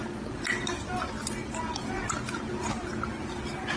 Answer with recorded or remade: recorded